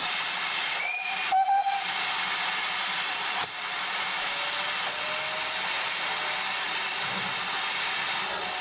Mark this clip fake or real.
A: real